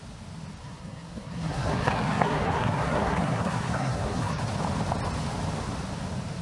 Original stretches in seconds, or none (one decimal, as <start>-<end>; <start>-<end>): 0.0-0.6; 4.4-6.4